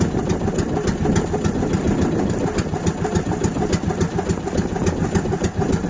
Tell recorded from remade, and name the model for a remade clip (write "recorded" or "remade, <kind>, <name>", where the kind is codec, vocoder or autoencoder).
recorded